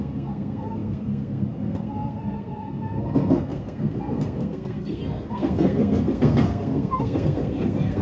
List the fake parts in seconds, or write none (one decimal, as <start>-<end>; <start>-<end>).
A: 0.0-8.0